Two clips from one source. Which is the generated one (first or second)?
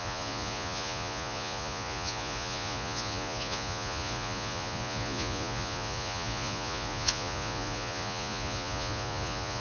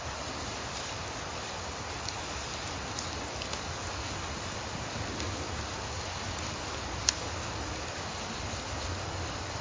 first